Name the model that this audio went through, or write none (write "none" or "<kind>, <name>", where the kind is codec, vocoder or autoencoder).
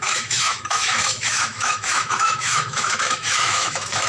autoencoder, DAC-VAE